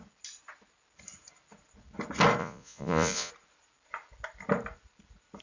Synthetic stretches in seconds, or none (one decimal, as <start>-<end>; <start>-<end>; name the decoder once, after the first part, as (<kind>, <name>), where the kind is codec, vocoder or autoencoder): 2.4-3.3 (vocoder, Vocos)